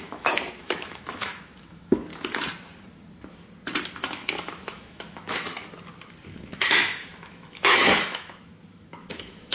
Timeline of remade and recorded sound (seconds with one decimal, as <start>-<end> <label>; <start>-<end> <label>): 0.0-2.1 remade; 2.1-3.9 recorded; 3.9-5.5 remade; 5.5-6.3 recorded; 6.3-9.5 remade